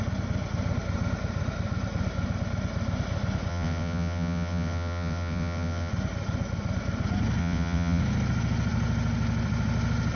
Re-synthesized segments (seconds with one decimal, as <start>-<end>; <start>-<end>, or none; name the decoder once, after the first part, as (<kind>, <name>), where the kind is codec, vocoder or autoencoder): 3.5-5.9 (vocoder, WaveNeXt); 7.4-8.0